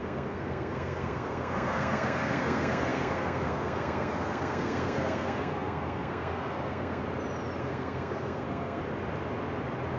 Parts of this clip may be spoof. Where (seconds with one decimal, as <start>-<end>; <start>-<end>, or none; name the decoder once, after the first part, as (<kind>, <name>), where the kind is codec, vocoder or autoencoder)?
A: 0.0-7.0 (codec, SNAC); 7.6-8.8